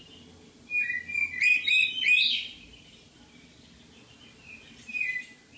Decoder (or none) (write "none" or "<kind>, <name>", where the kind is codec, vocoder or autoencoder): none